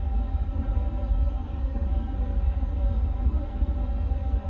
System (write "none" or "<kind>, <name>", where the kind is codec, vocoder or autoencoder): codec, SNAC